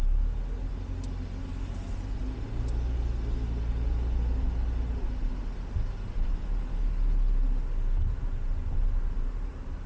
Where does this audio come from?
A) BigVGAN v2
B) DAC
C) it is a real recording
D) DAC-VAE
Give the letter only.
C